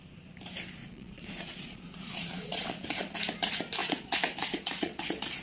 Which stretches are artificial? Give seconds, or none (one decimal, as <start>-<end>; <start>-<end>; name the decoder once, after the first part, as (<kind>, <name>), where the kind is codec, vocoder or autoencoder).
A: 0.8-3.1 (vocoder, Vocos); 3.8-5.4